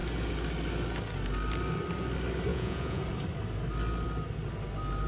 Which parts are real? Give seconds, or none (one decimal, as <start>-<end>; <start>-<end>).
0.0-2.5; 3.0-5.1